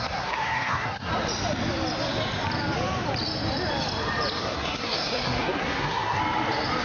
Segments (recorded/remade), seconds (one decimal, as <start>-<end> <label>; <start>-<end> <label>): 0.0-1.1 remade; 1.1-4.4 recorded; 4.4-6.2 remade; 6.2-6.8 recorded